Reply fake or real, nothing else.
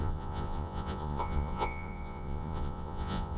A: fake